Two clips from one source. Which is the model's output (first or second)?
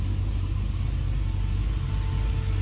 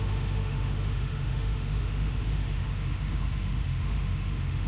second